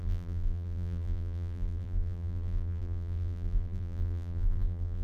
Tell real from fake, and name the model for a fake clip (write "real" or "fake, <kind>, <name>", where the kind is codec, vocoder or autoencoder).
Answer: fake, vocoder, BigVGAN v2